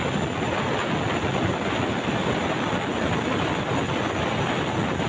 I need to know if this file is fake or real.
real